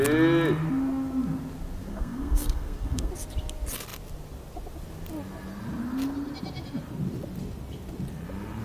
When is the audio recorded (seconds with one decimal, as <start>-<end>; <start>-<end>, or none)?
0.0-1.9; 3.1-8.6